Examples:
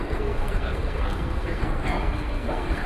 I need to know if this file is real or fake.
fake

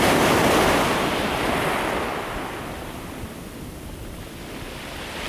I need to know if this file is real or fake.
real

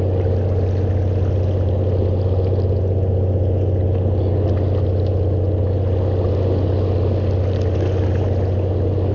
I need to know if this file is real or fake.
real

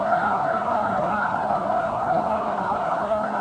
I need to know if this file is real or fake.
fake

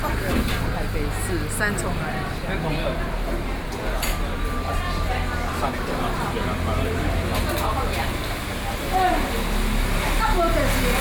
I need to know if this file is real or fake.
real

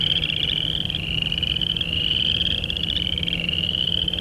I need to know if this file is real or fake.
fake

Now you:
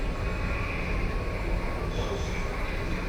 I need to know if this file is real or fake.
real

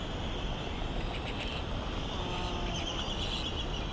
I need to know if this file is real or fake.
real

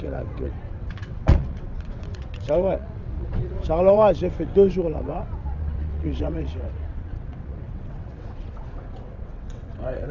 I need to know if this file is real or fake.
fake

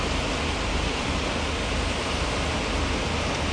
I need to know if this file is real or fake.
real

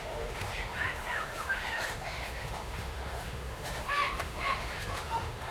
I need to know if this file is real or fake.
fake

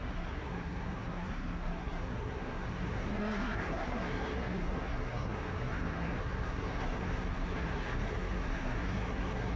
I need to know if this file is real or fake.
fake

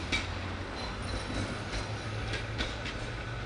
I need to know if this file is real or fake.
real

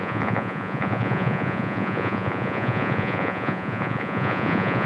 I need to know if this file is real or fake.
fake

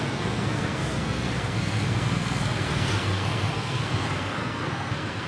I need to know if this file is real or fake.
fake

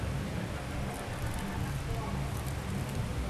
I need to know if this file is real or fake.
real